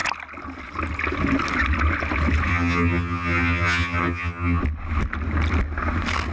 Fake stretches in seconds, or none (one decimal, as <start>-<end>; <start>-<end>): 2.5-4.6